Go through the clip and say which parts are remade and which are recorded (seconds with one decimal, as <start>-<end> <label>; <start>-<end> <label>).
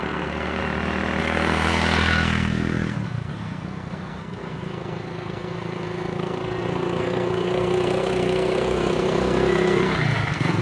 0.0-0.6 remade; 0.6-1.2 recorded; 1.2-10.6 remade